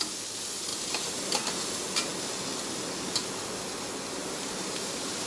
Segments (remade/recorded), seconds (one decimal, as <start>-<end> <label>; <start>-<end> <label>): 0.0-0.7 recorded; 0.7-1.4 remade; 1.4-4.2 recorded; 4.2-5.3 remade